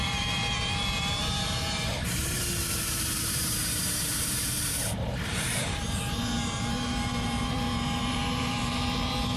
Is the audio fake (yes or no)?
yes